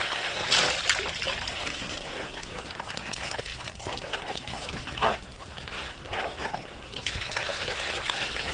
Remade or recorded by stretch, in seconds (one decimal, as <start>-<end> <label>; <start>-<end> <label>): 0.0-0.4 remade; 0.4-1.5 recorded; 1.5-8.5 remade